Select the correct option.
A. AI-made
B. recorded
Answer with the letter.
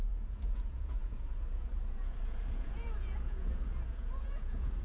A